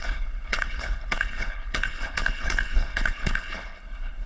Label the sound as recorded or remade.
remade